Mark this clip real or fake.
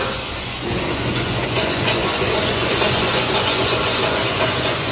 fake